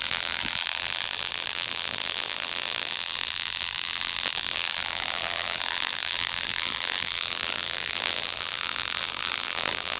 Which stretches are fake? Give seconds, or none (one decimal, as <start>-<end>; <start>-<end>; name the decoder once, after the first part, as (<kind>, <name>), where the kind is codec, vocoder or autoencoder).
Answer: 0.0-10.0 (vocoder, BigVGAN v2)